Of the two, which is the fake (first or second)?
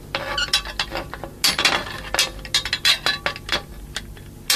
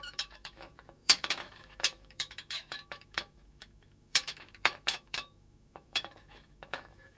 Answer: second